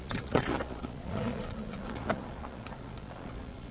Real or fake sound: fake